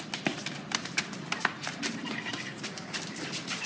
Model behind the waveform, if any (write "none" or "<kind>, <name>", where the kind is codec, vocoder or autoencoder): vocoder, BigVGAN v2